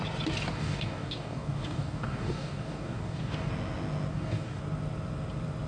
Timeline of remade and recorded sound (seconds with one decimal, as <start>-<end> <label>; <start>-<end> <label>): 0.0-0.5 recorded; 0.5-3.5 remade; 3.5-4.1 recorded; 4.1-4.6 remade; 4.6-5.7 recorded